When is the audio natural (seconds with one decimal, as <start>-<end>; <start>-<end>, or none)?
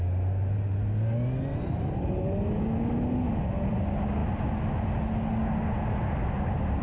0.0-1.5; 2.6-6.8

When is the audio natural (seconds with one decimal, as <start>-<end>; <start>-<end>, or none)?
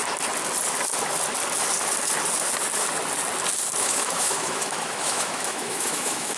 0.0-3.8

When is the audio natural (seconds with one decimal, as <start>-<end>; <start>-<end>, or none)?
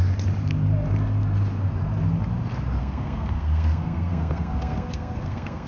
0.0-2.8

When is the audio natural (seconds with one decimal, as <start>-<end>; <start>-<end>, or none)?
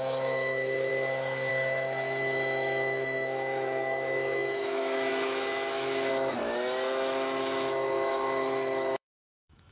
0.9-1.5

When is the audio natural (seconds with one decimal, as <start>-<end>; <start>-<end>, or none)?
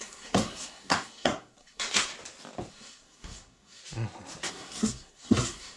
2.1-2.7; 3.8-4.5